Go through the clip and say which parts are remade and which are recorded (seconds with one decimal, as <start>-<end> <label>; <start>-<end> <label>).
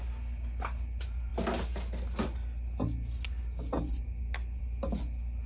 0.0-5.5 recorded